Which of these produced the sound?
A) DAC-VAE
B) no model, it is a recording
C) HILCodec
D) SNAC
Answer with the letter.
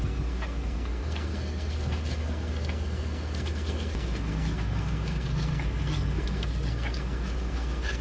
D